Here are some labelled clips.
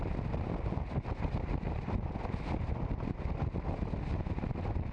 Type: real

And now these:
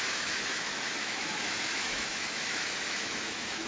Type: fake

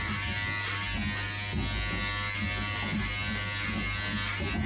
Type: real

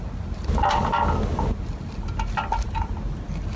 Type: real